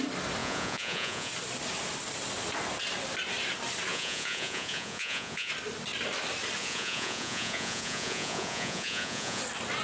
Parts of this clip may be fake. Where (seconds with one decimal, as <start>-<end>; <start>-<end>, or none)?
0.4-1.3; 3.9-5.5; 6.6-9.4